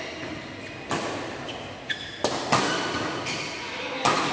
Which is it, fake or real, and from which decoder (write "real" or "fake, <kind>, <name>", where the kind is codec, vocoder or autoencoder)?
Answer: real